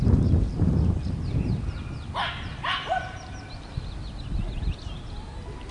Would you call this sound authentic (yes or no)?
yes